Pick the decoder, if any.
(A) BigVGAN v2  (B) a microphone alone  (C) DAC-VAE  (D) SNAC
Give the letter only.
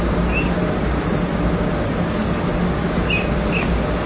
B